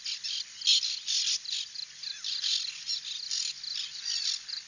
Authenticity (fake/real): real